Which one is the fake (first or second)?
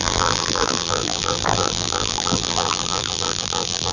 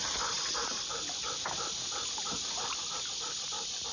first